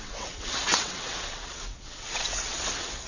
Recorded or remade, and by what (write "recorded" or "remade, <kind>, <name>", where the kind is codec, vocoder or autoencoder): remade, vocoder, WaveNeXt